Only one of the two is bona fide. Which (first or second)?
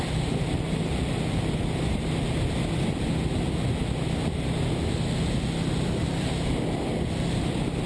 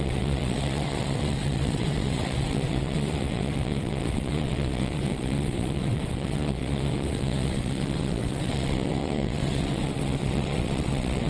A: first